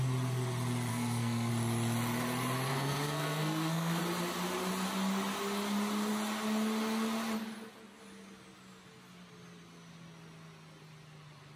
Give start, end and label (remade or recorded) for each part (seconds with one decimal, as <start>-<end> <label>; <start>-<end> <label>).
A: 0.0-0.9 recorded; 0.9-1.5 remade; 1.5-2.7 recorded; 2.7-4.0 remade; 4.0-11.6 recorded